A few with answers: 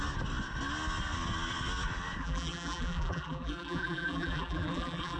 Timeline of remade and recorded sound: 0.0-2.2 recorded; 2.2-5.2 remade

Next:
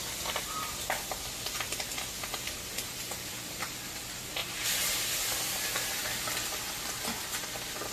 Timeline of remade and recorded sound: 0.0-7.9 recorded

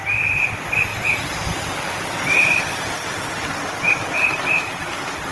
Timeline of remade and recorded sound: 0.0-0.9 remade; 0.9-1.4 recorded; 1.4-5.3 remade

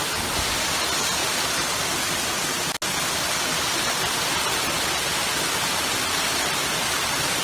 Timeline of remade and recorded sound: 0.0-1.2 recorded; 1.2-2.0 remade; 2.0-7.4 recorded

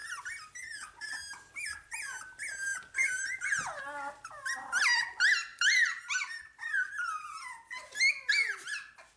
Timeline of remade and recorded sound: 0.0-5.5 recorded; 5.5-6.9 remade; 6.9-9.2 recorded

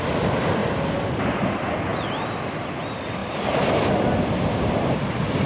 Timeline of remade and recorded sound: 0.0-0.6 remade; 0.6-1.5 recorded; 1.5-1.9 remade; 1.9-2.8 recorded; 2.8-5.5 remade

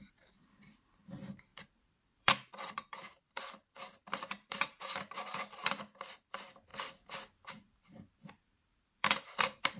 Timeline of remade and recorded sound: 0.0-6.7 remade; 6.7-7.5 recorded; 7.5-9.8 remade